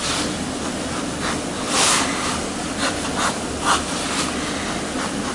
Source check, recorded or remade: recorded